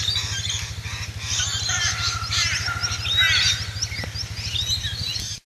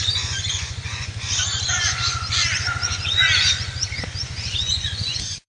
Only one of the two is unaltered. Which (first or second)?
first